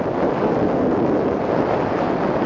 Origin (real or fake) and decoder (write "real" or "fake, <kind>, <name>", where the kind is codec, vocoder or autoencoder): real